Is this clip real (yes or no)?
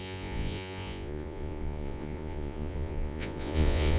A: no